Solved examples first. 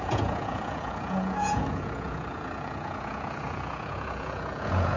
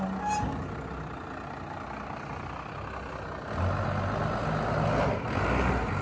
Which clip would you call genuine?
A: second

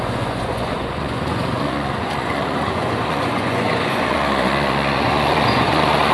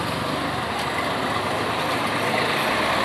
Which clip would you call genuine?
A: second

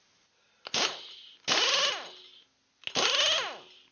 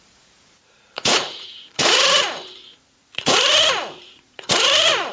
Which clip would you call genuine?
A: first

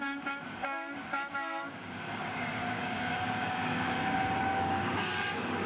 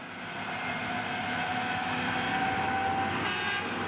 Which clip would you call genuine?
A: second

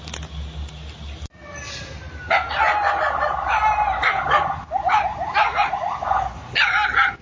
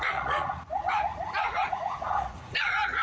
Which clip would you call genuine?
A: first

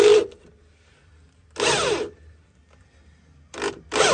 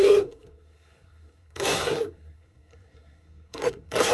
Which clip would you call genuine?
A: first